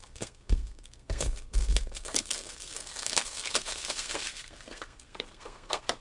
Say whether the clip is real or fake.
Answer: fake